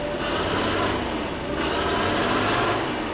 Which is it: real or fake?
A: real